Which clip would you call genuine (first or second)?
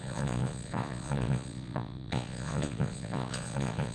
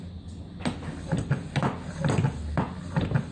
second